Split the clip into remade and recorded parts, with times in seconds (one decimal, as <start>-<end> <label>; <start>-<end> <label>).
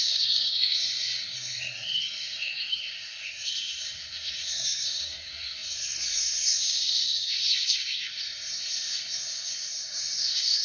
0.0-10.6 remade